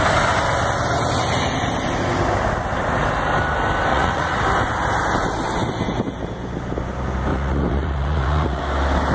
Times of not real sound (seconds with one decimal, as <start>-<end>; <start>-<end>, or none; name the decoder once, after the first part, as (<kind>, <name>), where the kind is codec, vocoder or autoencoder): 3.9-4.4 (vocoder, Vocos); 7.3-8.6